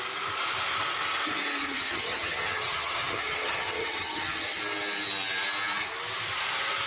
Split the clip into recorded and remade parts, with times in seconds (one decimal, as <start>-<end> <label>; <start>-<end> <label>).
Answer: 0.0-1.6 recorded; 1.6-4.6 remade; 4.6-6.9 recorded